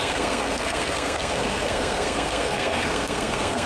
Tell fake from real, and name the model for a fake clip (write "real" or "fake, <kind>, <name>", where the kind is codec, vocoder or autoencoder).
fake, codec, SNAC